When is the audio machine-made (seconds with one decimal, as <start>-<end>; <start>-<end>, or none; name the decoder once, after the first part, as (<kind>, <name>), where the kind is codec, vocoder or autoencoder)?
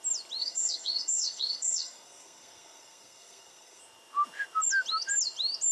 0.4-3.8 (codec, SNAC)